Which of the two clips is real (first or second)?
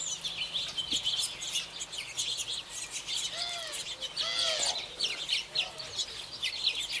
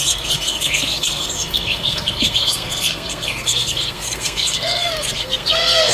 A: first